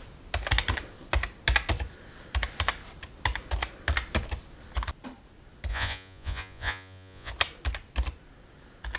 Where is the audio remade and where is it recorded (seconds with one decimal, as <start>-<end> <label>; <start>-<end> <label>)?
0.0-5.7 recorded; 5.7-7.3 remade; 7.3-9.0 recorded